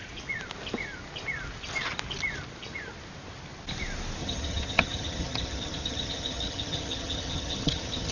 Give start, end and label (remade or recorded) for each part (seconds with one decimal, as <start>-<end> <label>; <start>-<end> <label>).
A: 0.0-4.2 recorded; 4.2-8.1 remade